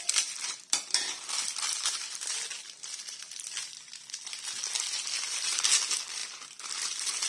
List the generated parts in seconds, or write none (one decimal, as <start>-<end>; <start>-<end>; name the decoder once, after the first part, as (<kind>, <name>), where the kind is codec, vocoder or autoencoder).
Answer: none